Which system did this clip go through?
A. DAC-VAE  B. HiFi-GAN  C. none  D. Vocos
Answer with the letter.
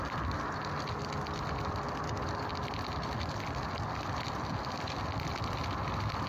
C